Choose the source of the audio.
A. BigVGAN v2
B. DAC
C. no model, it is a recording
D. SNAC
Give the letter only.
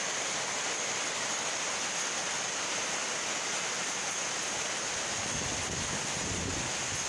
C